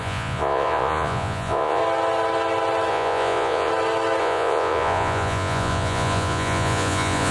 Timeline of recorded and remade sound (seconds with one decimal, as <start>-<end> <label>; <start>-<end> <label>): 0.0-1.8 remade; 1.8-2.9 recorded; 2.9-3.7 remade; 3.7-4.2 recorded; 4.2-7.3 remade